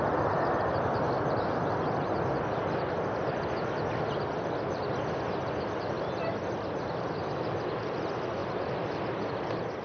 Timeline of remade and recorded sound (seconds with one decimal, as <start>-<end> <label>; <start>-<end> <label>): 0.0-9.8 recorded